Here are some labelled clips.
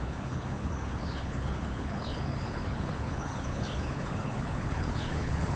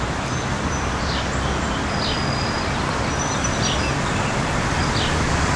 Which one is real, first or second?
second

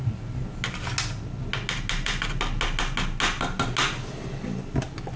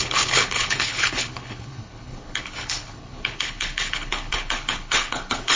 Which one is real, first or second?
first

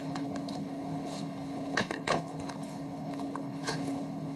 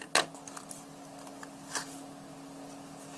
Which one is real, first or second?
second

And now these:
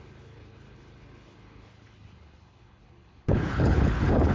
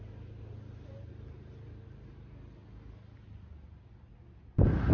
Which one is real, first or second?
second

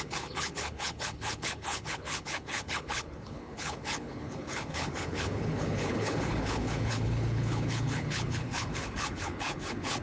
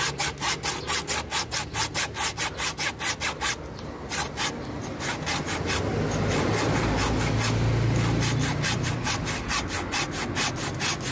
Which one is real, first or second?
second